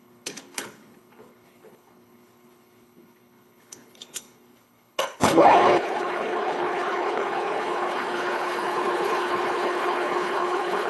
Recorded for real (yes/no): no